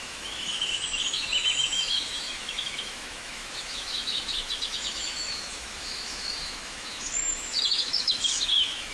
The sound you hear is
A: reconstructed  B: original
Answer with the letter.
A